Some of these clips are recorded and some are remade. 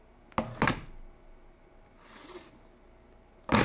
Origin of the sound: recorded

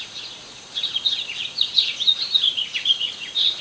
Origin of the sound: remade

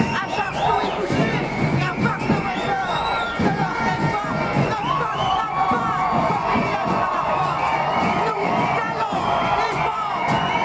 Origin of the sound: remade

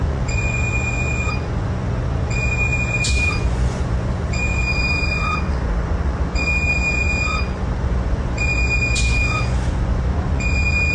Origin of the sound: remade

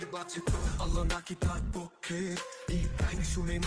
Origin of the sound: remade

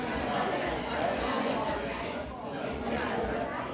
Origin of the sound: remade